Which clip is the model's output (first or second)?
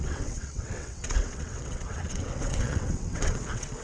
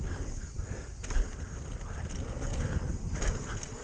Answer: first